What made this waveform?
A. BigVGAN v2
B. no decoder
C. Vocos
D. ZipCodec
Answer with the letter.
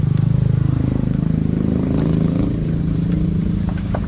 A